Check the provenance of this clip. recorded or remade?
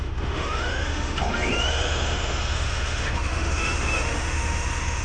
remade